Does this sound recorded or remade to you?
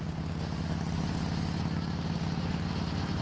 recorded